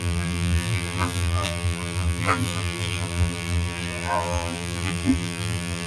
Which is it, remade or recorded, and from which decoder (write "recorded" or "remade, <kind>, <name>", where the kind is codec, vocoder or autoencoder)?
remade, vocoder, BigVGAN v2